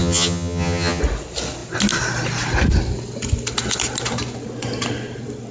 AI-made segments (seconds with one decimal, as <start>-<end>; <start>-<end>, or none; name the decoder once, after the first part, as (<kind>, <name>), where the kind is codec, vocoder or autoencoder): 0.0-1.0 (vocoder, HiFi-GAN)